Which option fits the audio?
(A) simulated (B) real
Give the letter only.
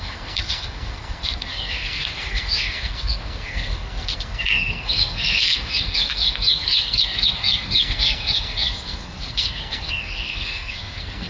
A